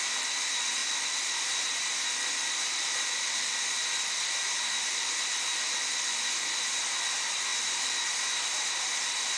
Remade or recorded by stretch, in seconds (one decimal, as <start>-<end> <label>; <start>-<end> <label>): 0.0-9.4 recorded